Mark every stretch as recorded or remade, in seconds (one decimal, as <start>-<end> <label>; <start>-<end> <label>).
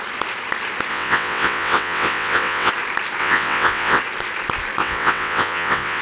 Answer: 0.0-0.9 recorded; 0.9-2.7 remade; 2.7-3.2 recorded; 3.2-4.0 remade; 4.0-4.8 recorded; 4.8-6.0 remade